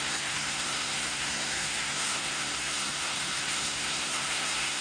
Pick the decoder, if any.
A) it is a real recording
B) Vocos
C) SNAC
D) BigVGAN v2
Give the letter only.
C